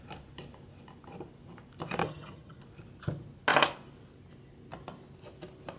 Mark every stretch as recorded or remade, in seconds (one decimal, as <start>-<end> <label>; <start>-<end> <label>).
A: 0.0-2.0 recorded; 2.0-2.6 remade; 2.6-5.8 recorded